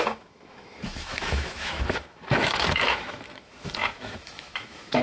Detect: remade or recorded remade